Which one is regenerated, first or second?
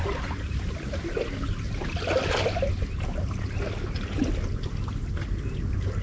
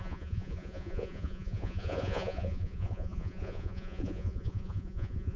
second